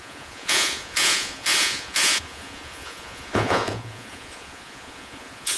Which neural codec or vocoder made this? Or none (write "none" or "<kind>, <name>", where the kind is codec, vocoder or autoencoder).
vocoder, Vocos